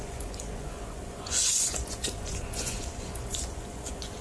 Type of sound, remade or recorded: remade